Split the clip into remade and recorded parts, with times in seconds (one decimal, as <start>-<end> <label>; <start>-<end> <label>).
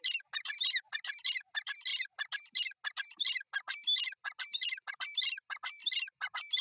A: 0.0-6.6 recorded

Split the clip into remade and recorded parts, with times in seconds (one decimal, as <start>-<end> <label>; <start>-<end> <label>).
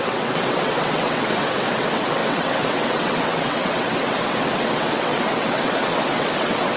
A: 0.0-6.8 remade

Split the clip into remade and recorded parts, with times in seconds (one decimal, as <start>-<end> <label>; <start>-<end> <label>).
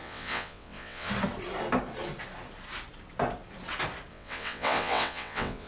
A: 0.0-1.1 remade; 1.1-4.1 recorded; 4.1-5.7 remade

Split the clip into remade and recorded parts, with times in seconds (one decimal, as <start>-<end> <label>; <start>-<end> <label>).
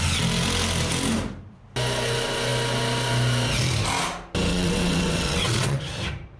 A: 0.0-4.5 recorded; 4.5-5.8 remade; 5.8-6.4 recorded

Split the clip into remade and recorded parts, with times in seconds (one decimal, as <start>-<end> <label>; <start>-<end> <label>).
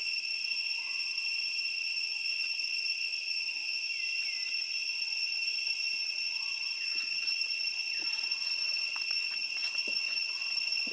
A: 0.0-3.6 remade; 3.6-5.0 recorded; 5.0-5.4 remade; 5.4-6.0 recorded; 6.0-10.9 remade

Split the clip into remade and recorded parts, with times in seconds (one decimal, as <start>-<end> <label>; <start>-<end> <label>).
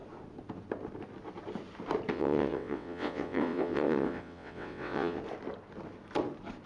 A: 0.0-2.1 recorded; 2.1-5.2 remade; 5.2-6.7 recorded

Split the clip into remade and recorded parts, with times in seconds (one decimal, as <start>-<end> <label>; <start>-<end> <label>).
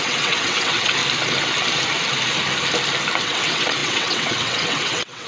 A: 0.0-1.0 remade; 1.0-3.2 recorded; 3.2-5.3 remade